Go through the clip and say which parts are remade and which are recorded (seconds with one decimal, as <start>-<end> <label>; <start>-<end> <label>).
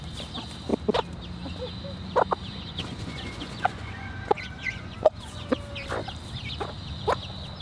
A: 0.0-2.5 recorded; 2.5-5.5 remade; 5.5-7.6 recorded